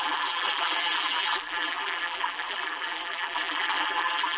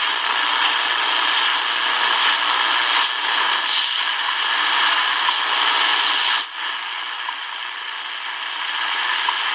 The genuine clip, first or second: second